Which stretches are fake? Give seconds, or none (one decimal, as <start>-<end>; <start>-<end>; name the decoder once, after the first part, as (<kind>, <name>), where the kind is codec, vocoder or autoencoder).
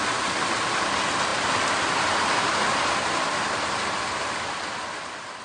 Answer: none